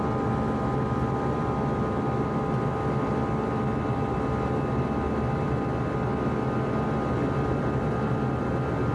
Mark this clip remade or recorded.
recorded